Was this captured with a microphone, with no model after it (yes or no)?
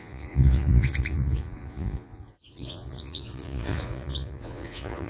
no